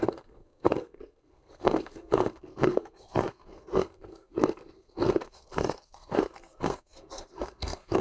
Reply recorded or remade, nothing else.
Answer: remade